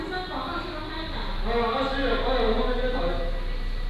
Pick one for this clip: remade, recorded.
recorded